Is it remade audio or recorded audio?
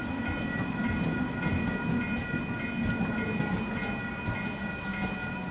recorded